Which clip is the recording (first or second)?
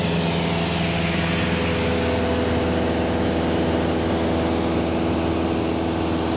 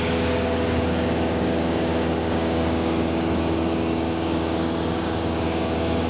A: first